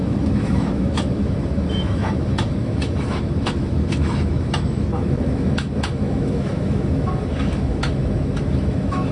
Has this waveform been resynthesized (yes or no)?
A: yes